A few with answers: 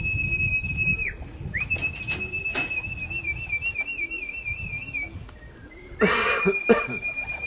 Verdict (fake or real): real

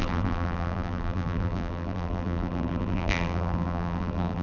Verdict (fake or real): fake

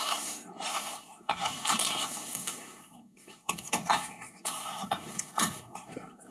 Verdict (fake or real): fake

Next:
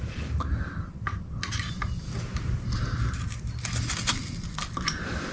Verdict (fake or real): real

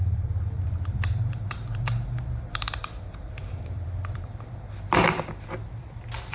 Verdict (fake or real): fake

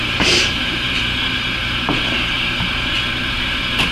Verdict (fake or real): fake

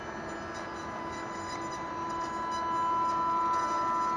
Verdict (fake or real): real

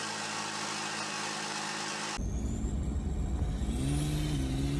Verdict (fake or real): real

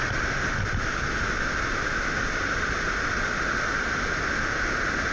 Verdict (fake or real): real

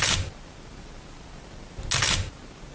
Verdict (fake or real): real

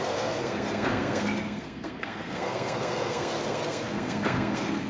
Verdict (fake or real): fake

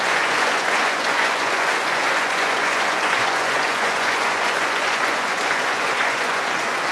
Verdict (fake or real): fake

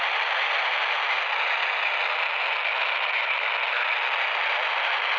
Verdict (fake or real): real